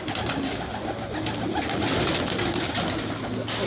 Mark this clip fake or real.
real